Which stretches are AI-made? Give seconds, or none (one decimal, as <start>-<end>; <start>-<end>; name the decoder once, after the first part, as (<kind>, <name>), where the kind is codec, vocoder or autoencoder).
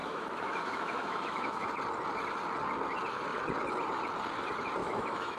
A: 0.0-1.7 (autoencoder, DAC-VAE); 4.8-5.4